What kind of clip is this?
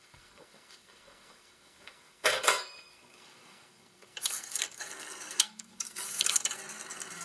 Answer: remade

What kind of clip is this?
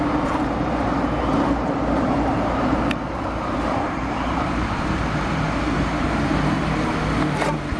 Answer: remade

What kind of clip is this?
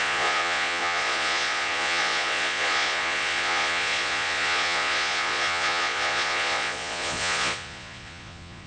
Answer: remade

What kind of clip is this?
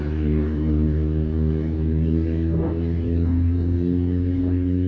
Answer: remade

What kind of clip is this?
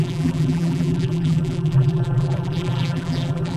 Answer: remade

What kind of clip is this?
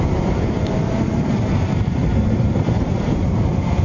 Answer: remade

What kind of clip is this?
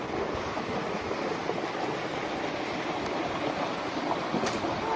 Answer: recorded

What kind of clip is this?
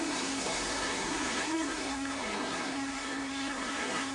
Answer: remade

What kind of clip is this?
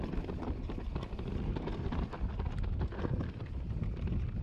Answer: recorded